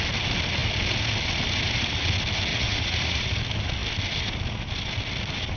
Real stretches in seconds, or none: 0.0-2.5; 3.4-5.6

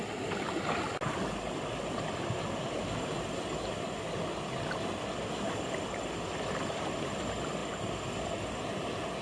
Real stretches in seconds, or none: 0.0-9.2

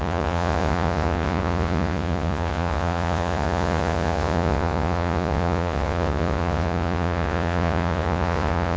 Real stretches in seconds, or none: none

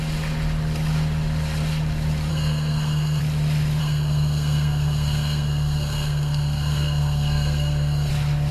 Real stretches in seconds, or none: 0.0-2.3; 3.2-3.8; 8.1-8.5

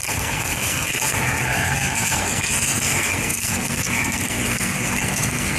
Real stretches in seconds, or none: none

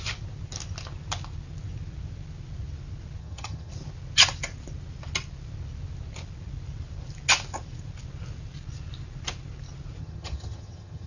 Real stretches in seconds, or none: 0.0-3.2; 3.7-10.0

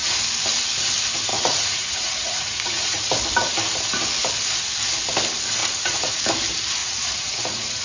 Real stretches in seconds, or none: 0.0-1.3; 3.1-5.6; 6.2-6.8